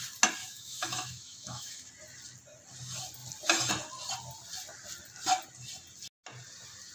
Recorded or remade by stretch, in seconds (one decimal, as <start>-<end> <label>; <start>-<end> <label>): 0.0-0.4 recorded; 0.4-1.9 remade; 1.9-6.9 recorded